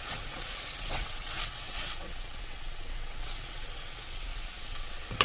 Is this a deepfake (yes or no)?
yes